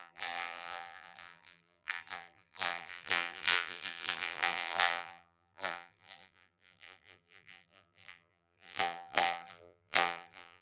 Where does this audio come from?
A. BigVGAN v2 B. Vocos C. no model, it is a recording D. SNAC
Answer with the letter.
A